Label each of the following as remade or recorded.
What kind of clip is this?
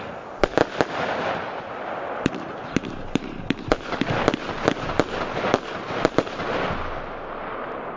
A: recorded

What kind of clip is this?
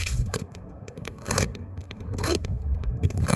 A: remade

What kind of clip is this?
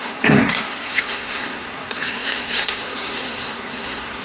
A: remade